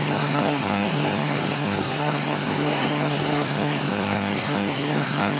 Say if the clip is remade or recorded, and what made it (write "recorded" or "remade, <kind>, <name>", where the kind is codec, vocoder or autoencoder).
remade, codec, SNAC